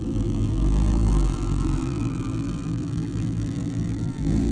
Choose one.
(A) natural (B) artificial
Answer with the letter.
B